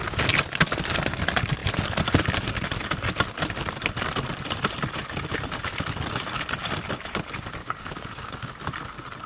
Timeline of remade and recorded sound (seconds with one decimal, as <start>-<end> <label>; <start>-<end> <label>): 0.0-7.6 recorded; 7.6-8.5 remade; 8.5-9.3 recorded

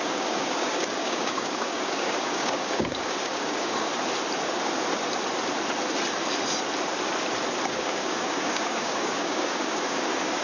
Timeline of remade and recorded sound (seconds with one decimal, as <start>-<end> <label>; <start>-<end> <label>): 0.0-3.9 remade; 3.9-7.7 recorded; 7.7-10.4 remade

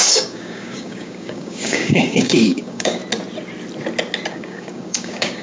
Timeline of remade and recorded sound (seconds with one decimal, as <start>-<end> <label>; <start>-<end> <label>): 0.0-3.0 remade; 3.0-4.3 recorded; 4.3-5.4 remade

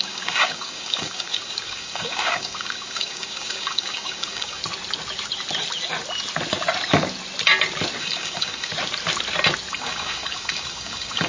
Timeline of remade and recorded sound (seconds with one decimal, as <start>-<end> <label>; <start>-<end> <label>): 0.0-4.6 remade; 4.6-8.0 recorded; 8.0-8.7 remade; 8.7-9.7 recorded; 9.7-11.3 remade

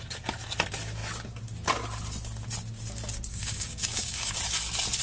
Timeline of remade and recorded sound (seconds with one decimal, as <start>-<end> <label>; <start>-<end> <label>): 0.0-3.3 recorded; 3.3-4.4 remade; 4.4-5.0 recorded

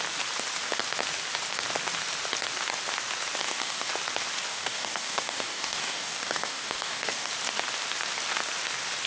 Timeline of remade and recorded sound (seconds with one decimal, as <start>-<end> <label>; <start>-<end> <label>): 0.0-3.4 recorded; 3.4-3.9 remade; 3.9-4.5 recorded; 4.5-7.3 remade; 7.3-9.1 recorded